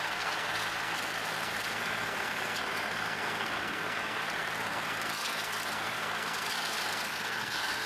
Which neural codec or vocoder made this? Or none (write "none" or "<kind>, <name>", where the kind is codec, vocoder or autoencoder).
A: codec, SNAC